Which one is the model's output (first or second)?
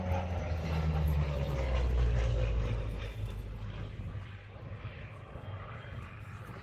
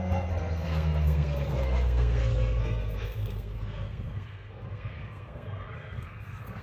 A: second